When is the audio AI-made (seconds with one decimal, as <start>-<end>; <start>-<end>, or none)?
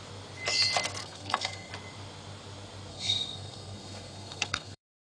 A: 1.0-1.7; 2.9-5.0